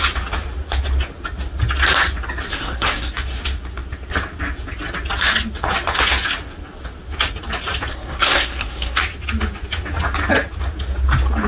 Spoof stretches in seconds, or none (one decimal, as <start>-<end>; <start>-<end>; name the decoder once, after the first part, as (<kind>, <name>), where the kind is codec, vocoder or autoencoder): 2.5-3.1 (codec, SNAC); 7.9-9.0

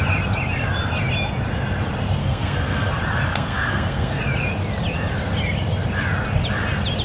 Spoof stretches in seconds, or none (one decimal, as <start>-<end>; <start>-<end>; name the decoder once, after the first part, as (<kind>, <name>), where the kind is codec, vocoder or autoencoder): 2.2-2.9 (codec, SNAC); 3.3-4.2

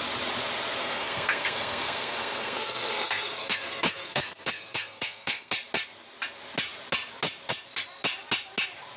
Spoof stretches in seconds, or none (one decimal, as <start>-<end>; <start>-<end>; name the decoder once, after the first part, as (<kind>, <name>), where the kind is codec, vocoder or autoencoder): 0.8-5.5 (codec, SNAC)

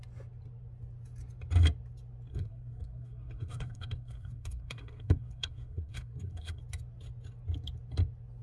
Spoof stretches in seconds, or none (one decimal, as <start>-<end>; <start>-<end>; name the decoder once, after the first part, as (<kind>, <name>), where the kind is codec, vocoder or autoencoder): 2.3-6.6 (codec, SNAC)